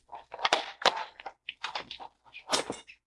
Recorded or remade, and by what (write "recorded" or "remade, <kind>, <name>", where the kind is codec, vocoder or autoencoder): recorded